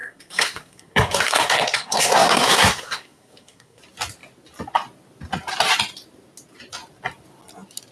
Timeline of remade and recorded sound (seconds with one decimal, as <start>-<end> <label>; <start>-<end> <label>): 0.0-3.8 remade; 3.8-7.9 recorded